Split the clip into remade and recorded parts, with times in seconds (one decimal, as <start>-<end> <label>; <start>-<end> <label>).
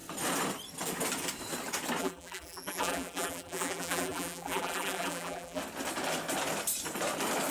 0.0-2.0 recorded; 2.0-5.6 remade; 5.6-7.5 recorded